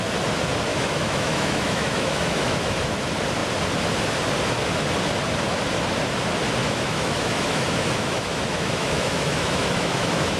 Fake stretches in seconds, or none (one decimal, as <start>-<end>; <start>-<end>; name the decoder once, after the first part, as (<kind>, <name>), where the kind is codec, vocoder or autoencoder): 0.7-2.9 (autoencoder, DAC-VAE); 6.6-10.4